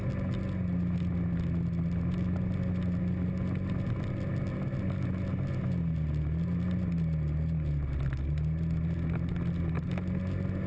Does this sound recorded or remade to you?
recorded